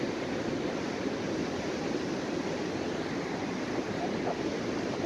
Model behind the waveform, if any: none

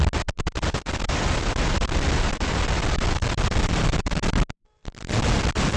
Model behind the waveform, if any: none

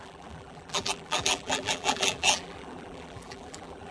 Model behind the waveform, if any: vocoder, BigVGAN v2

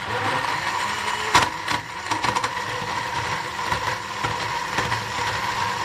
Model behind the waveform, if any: vocoder, BigVGAN v2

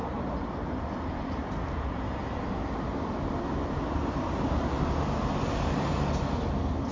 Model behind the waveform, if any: none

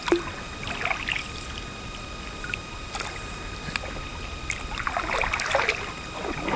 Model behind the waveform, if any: none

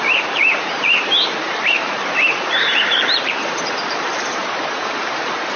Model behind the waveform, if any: vocoder, BigVGAN v2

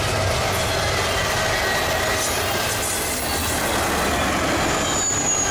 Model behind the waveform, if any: none